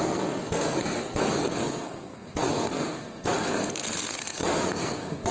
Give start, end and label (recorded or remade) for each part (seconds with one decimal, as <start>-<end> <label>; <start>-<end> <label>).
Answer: 0.0-5.3 remade